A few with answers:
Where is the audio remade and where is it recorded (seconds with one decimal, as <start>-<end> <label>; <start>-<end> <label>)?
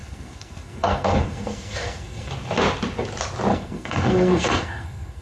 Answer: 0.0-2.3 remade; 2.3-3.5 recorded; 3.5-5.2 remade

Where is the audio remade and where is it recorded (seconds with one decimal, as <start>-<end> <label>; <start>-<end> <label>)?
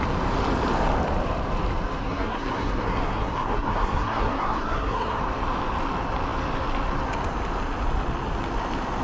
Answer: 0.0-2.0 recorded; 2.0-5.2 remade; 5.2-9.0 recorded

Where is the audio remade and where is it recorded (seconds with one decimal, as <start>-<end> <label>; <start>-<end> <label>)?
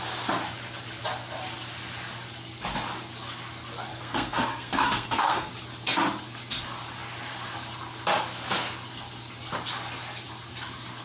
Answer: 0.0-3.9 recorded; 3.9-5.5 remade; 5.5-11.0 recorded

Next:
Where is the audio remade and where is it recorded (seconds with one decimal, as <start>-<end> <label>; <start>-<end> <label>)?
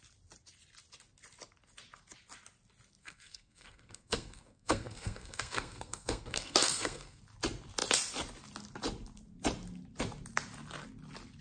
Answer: 0.0-3.0 recorded; 3.0-7.2 remade; 7.2-11.4 recorded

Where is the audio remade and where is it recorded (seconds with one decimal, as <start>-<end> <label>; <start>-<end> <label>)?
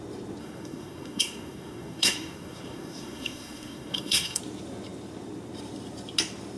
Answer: 0.0-0.4 recorded; 0.4-4.4 remade; 4.4-6.6 recorded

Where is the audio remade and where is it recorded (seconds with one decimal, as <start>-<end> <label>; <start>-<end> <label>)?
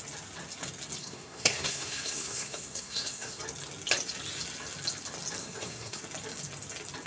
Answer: 0.0-1.0 recorded; 1.0-3.4 remade; 3.4-5.4 recorded; 5.4-6.0 remade; 6.0-7.1 recorded